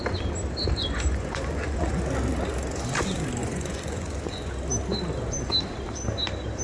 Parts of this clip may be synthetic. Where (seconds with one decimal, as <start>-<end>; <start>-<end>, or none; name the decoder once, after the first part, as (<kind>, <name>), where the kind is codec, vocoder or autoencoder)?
0.8-2.0 (vocoder, Vocos); 3.4-4.5